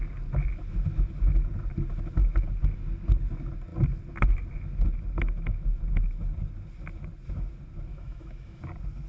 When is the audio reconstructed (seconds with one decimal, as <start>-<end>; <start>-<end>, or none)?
7.9-8.6